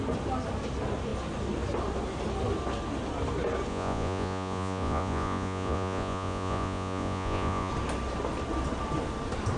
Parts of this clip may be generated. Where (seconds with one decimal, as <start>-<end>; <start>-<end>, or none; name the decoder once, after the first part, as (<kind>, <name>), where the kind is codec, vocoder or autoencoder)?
3.7-7.7 (vocoder, Vocos)